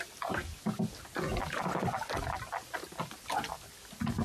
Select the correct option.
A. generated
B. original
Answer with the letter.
B